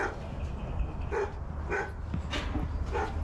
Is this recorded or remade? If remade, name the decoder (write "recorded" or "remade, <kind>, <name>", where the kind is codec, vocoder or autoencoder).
recorded